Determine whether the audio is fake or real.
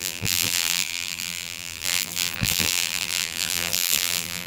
fake